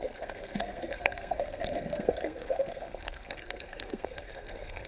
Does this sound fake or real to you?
fake